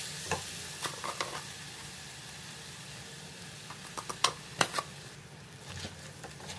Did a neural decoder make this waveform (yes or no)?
no